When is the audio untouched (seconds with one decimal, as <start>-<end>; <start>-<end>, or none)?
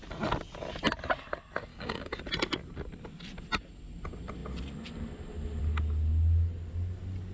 0.0-1.7; 2.2-7.3